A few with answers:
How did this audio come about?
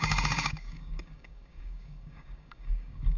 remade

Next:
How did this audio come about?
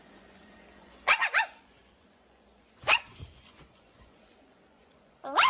remade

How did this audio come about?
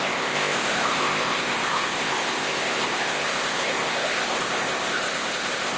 remade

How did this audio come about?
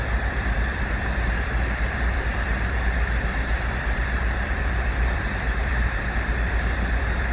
remade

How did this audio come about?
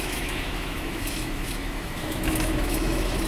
remade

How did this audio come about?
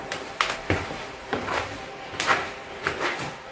remade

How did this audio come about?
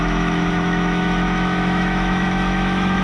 remade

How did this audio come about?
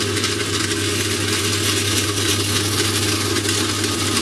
recorded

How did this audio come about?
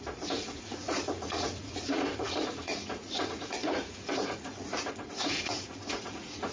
remade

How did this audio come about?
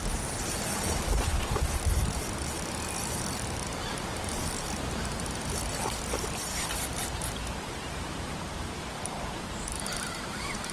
remade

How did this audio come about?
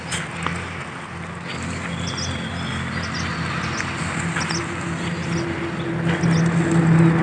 recorded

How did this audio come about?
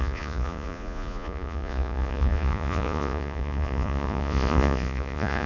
remade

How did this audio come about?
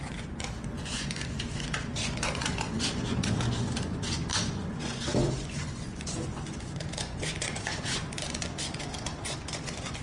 remade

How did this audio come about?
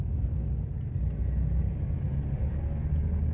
recorded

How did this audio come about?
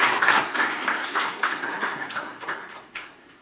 remade